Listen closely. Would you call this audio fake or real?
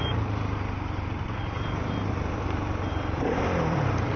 fake